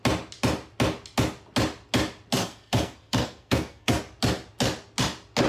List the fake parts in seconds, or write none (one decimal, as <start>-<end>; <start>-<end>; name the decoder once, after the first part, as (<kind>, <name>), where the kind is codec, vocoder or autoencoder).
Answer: 2.4-4.0 (codec, SNAC)